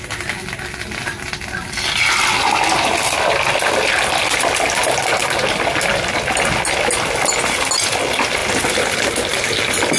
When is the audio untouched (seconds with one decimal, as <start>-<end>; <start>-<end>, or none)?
0.0-10.0